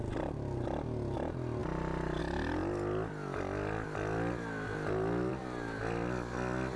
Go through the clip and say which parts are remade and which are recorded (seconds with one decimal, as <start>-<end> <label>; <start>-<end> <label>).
0.0-6.8 recorded